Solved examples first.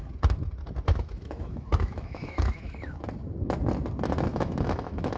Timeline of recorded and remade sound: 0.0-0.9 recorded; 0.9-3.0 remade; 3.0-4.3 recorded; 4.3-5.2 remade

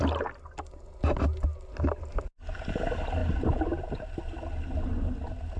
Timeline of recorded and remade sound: 0.0-5.6 recorded